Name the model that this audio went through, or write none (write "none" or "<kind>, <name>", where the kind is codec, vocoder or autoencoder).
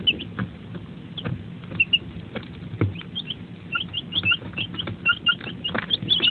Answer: none